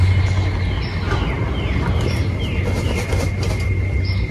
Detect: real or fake real